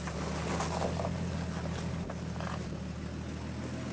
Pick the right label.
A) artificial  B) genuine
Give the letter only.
B